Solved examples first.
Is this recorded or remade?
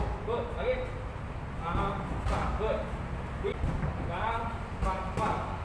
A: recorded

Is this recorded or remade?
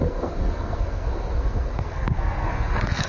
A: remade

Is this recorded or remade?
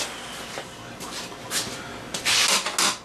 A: recorded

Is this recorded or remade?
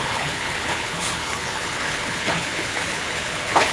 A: remade